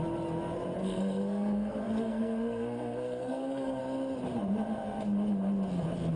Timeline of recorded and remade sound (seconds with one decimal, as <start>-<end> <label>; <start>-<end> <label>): 0.0-0.8 recorded; 0.8-3.8 remade; 3.8-6.2 recorded